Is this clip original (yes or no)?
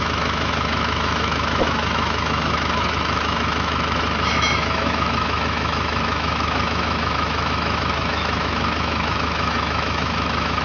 no